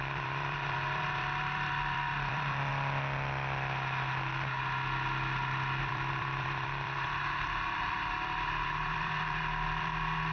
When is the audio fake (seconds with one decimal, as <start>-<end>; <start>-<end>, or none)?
0.0-2.7; 5.8-10.3